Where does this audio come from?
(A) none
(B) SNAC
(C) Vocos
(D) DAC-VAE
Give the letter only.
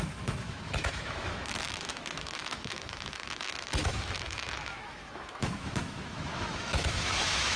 D